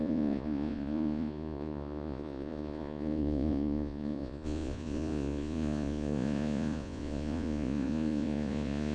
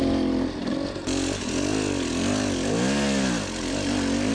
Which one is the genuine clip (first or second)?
second